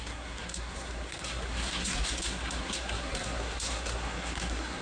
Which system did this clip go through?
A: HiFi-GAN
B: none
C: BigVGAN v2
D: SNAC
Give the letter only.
D